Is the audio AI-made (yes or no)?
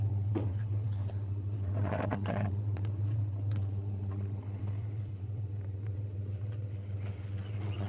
yes